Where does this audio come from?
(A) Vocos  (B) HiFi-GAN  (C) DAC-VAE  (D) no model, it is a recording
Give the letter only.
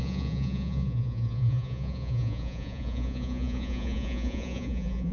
A